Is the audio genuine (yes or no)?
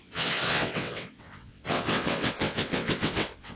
no